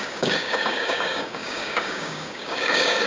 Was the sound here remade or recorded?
remade